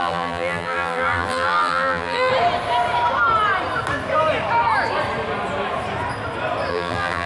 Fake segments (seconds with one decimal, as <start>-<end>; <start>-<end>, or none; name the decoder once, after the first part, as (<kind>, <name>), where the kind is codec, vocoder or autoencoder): 0.0-2.3 (vocoder, BigVGAN v2); 6.7-7.3